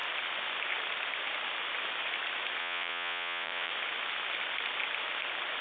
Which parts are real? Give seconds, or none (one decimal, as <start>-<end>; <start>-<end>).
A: 0.0-2.6; 3.7-5.6